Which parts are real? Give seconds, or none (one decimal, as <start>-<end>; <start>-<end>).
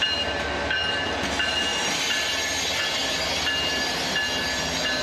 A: 0.0-5.0